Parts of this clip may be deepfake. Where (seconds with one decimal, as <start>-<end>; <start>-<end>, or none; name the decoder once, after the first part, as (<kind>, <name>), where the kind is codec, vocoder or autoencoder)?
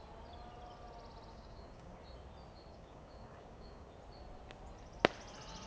1.3-2.0 (codec, DAC); 2.7-3.9